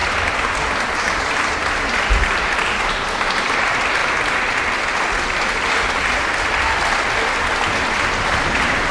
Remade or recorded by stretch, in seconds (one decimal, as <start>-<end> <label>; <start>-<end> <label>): 0.0-0.8 recorded; 0.8-4.0 remade; 4.0-8.4 recorded; 8.4-8.9 remade